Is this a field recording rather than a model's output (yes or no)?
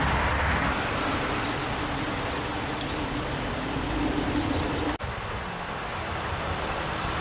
yes